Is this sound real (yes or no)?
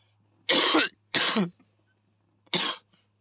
yes